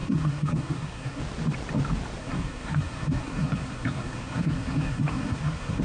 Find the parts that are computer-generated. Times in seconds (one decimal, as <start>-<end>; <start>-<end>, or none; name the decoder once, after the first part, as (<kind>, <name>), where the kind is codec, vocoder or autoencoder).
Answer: 0.0-1.2 (codec, SNAC); 2.2-5.8